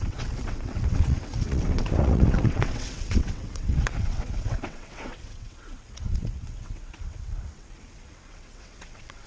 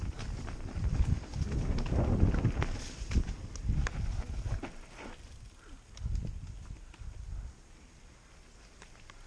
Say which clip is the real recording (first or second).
second